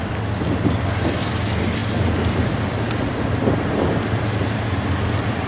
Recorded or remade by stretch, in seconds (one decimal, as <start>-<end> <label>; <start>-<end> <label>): 0.0-5.5 remade